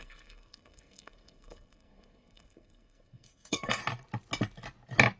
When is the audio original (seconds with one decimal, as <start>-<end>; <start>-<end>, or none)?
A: 3.8-5.2